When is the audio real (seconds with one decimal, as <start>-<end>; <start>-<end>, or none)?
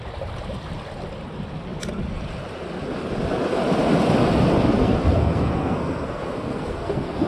0.0-4.8